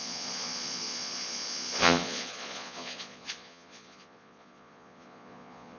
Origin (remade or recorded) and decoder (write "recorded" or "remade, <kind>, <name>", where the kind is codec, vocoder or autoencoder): remade, vocoder, Vocos